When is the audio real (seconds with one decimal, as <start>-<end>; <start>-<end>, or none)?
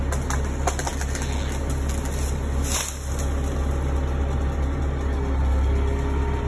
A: 0.0-6.5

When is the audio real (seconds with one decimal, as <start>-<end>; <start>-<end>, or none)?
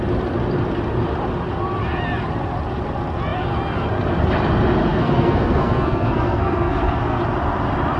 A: 0.0-4.9; 7.2-8.0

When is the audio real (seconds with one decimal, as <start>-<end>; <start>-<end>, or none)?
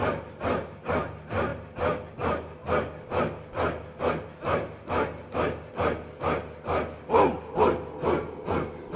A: 0.0-9.0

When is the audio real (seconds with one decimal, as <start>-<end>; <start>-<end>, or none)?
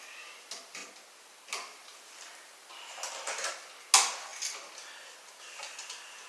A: 0.0-6.3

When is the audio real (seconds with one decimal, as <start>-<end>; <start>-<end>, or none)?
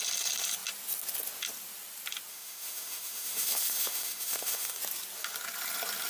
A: 0.0-2.3; 4.8-6.1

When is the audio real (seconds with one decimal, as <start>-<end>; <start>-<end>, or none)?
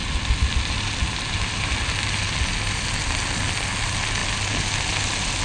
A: 0.0-5.4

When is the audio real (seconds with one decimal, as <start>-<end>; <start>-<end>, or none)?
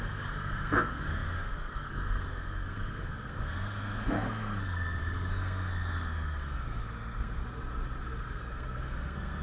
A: 7.4-8.2